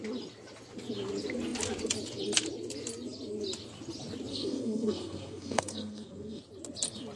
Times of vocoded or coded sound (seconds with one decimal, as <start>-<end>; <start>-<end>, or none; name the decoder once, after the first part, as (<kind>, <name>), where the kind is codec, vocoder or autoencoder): 4.3-6.4 (codec, SNAC)